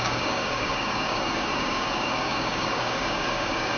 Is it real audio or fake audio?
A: fake